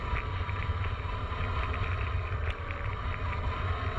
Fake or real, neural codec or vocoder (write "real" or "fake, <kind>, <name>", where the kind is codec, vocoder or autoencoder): real